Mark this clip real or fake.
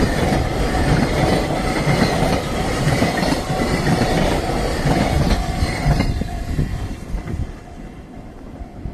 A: fake